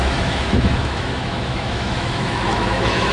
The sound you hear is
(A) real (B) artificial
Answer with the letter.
B